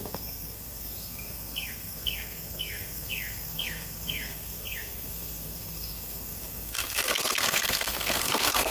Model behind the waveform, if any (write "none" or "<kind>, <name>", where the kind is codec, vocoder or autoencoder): codec, SNAC